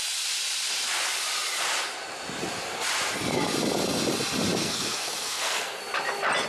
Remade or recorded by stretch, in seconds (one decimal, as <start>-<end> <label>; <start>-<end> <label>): 0.0-4.6 recorded; 4.6-5.8 remade; 5.8-6.5 recorded